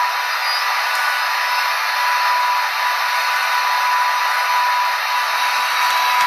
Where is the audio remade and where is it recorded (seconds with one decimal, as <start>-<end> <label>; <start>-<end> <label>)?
0.0-6.3 recorded